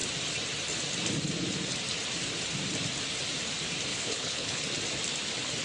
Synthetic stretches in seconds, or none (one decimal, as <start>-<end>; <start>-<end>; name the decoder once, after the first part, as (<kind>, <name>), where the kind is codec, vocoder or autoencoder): 3.9-4.6 (codec, HILCodec)